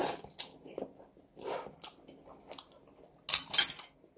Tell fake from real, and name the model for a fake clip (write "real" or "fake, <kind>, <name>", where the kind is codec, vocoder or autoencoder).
real